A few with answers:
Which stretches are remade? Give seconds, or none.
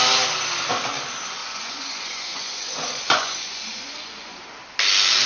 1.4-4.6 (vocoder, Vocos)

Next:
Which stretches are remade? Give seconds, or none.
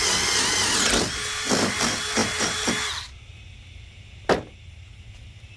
none